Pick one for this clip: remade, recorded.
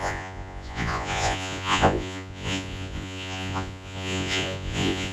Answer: remade